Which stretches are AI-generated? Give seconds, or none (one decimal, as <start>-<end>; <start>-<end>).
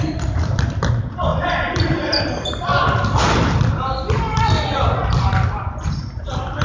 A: 1.3-2.2